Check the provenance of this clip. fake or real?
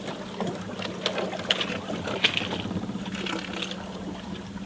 real